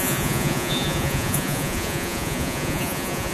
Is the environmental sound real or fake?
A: fake